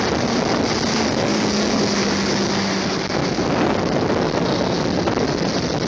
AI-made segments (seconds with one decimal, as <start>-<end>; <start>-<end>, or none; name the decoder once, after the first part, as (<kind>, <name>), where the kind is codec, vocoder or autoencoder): 1.3-1.8 (codec, DAC)